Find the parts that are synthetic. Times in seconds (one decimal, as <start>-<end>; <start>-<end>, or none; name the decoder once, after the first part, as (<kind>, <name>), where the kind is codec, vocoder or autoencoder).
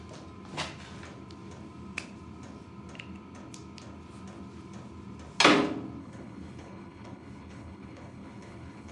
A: 6.0-8.9 (codec, HILCodec)